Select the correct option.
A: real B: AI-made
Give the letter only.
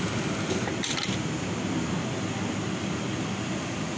A